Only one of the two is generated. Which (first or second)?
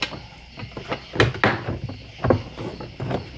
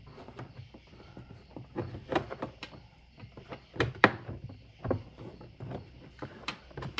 second